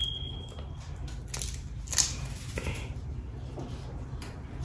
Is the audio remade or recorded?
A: recorded